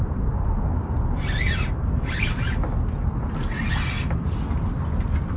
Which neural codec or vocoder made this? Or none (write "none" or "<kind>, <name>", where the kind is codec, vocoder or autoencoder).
none